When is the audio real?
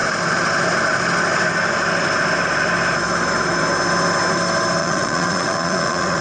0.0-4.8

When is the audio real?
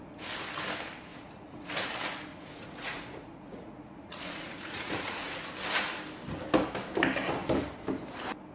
0.0-1.1; 1.9-2.3; 5.5-8.5